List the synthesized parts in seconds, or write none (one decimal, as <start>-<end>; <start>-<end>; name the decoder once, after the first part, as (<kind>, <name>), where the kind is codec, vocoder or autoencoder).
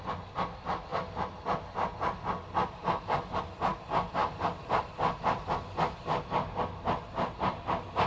none